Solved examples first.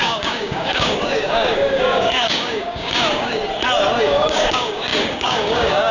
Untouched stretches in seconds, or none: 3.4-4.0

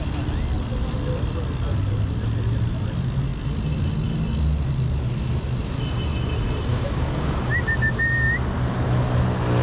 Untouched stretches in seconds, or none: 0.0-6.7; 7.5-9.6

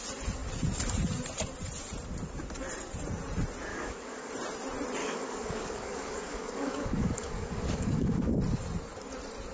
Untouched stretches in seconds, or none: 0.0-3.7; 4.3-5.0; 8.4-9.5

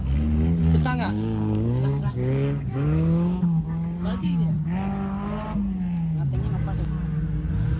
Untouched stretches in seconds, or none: 0.0-0.6; 4.4-7.8

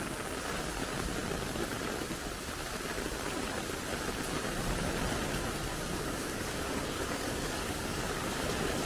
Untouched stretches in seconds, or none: 0.0-5.7; 8.5-8.9

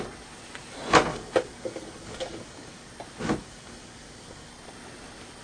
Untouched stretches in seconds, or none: 0.0-1.1; 2.9-3.4; 4.5-5.4

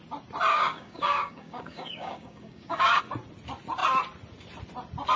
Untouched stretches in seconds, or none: 0.0-0.5; 3.0-5.2

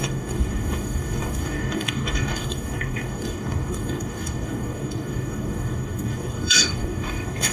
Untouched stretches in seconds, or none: none